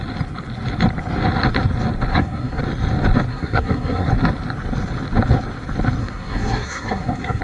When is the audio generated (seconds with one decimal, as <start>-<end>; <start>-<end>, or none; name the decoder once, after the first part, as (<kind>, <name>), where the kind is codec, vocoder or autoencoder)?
2.1-2.6 (codec, SNAC); 3.3-4.1; 6.0-7.4